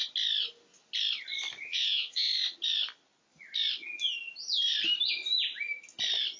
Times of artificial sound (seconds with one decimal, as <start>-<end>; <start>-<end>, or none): 1.6-2.3